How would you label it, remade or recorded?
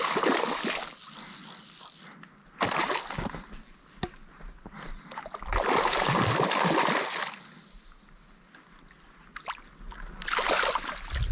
recorded